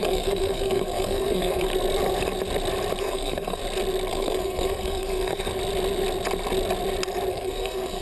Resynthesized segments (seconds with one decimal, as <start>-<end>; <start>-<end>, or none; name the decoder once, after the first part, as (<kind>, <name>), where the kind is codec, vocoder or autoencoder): 0.0-1.7 (codec, SNAC); 3.0-3.6; 4.1-5.5; 7.3-8.0